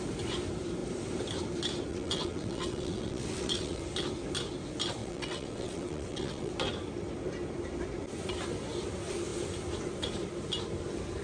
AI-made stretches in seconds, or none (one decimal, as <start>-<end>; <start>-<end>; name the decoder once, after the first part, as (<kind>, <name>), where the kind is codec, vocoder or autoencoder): 1.9-3.8 (vocoder, WaveNeXt); 5.0-6.5